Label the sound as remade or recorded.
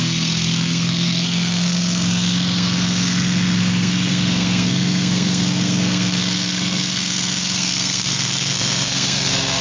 remade